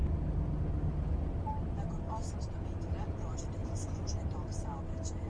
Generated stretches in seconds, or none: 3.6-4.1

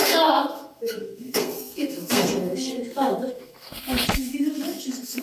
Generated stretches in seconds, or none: 0.0-5.2

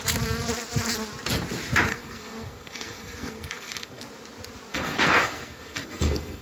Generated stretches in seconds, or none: 1.9-4.0; 4.7-6.4